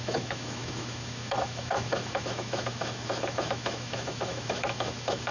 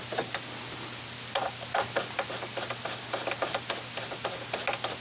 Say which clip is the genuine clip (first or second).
second